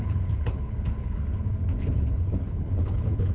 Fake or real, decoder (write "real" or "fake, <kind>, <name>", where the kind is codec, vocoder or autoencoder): fake, codec, HILCodec